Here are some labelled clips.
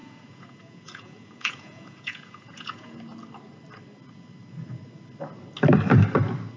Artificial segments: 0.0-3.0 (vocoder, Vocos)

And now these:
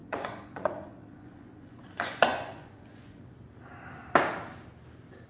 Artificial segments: 0.0-3.2 (vocoder, Vocos)

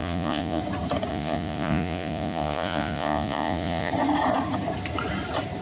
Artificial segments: 0.0-0.6 (vocoder, Vocos); 1.1-3.9

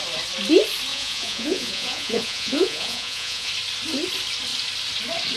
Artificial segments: 0.9-3.5 (vocoder, Vocos)